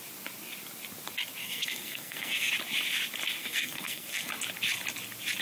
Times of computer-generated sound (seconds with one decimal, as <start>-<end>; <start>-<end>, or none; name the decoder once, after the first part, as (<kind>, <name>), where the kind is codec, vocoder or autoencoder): 1.4-2.5 (codec, SNAC); 3.4-4.3

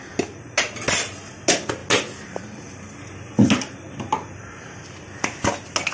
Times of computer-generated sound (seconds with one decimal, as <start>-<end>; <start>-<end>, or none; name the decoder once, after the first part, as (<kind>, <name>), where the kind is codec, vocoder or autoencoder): none